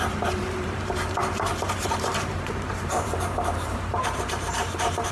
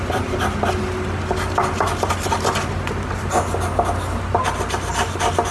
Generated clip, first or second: first